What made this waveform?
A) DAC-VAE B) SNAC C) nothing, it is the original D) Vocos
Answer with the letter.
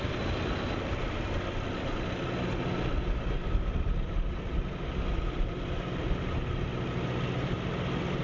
C